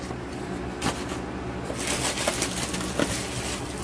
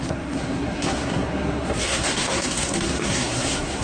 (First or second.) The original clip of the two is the first